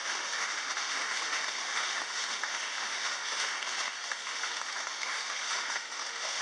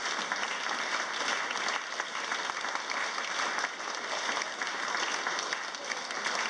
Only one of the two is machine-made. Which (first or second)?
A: first